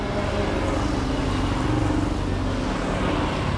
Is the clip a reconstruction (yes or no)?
no